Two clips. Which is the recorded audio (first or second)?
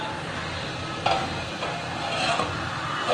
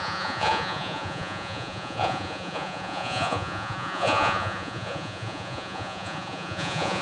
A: first